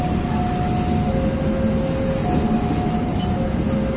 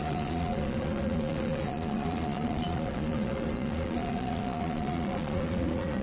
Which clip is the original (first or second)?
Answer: first